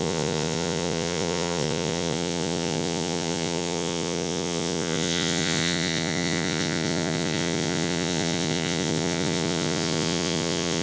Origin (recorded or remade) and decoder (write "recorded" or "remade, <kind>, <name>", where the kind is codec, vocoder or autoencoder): remade, vocoder, Vocos